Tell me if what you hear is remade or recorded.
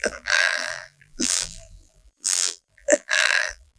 remade